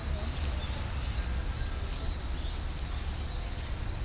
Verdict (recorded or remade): recorded